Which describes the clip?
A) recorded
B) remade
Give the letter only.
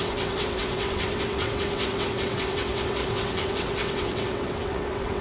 B